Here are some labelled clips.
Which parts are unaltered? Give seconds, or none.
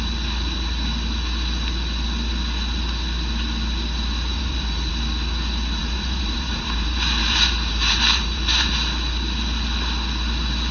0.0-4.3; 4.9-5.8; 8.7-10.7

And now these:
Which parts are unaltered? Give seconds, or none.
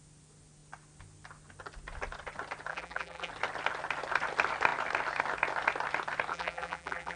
0.0-2.7; 3.3-6.3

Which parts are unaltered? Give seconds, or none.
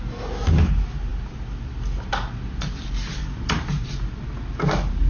0.0-3.2; 3.9-5.1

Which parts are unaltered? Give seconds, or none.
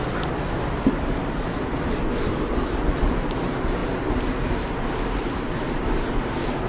0.0-3.8; 4.4-5.2; 6.1-6.7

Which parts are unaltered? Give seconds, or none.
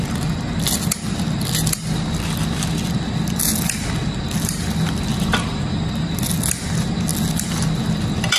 0.0-5.1; 5.7-8.4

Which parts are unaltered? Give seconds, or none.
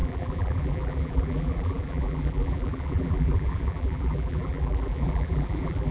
none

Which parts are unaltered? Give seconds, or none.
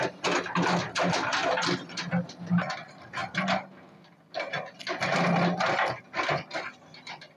0.0-7.4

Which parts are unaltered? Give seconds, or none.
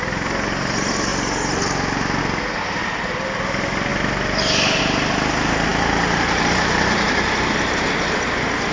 0.0-5.7; 7.8-8.7